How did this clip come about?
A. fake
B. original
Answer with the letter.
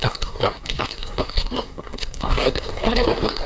A